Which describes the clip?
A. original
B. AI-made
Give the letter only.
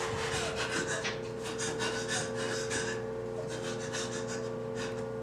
A